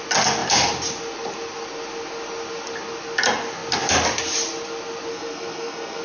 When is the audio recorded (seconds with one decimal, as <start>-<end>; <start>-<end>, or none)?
0.0-5.1

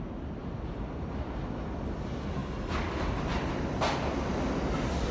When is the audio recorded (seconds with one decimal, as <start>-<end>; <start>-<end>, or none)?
0.0-5.1